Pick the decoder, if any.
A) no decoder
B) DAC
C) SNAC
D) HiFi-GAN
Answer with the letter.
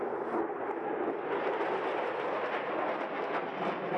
A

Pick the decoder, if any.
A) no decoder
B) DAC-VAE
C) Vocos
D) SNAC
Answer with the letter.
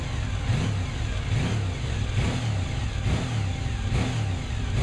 A